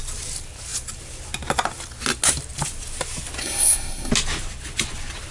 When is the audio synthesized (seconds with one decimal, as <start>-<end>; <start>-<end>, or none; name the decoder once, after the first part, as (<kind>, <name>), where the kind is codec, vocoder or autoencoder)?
3.4-4.1 (codec, SNAC)